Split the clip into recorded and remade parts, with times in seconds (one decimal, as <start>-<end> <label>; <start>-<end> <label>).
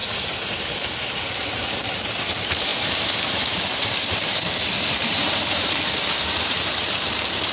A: 0.0-1.1 recorded; 1.1-7.5 remade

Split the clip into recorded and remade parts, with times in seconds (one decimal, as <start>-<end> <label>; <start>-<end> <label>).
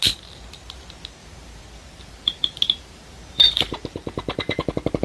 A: 0.0-1.2 recorded; 1.2-3.6 remade; 3.6-5.0 recorded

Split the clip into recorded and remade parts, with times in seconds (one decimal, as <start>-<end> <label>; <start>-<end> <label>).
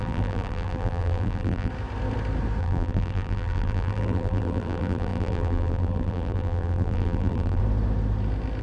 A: 0.0-1.7 remade; 1.7-2.6 recorded; 2.6-7.6 remade; 7.6-8.6 recorded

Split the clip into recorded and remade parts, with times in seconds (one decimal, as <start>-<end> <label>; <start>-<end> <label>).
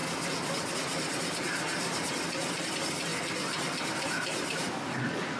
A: 0.0-2.7 recorded; 2.7-3.1 remade; 3.1-3.9 recorded; 3.9-5.4 remade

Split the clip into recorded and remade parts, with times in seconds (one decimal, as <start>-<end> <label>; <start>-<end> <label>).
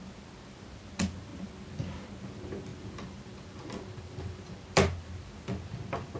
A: 0.0-2.7 recorded; 2.7-5.0 remade; 5.0-6.2 recorded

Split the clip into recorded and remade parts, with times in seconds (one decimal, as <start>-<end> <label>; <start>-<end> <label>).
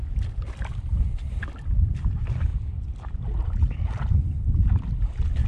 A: 0.0-0.7 recorded; 0.7-1.3 remade; 1.3-2.5 recorded; 2.5-3.8 remade; 3.8-5.5 recorded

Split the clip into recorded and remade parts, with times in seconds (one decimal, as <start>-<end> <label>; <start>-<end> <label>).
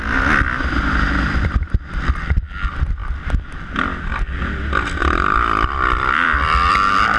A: 0.0-5.0 recorded; 5.0-6.7 remade; 6.7-7.2 recorded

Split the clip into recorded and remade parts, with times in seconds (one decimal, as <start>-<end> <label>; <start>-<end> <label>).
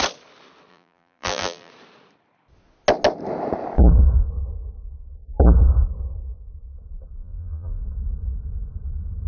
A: 0.0-0.7 recorded; 0.7-1.7 remade; 1.7-7.2 recorded; 7.2-7.8 remade; 7.8-9.3 recorded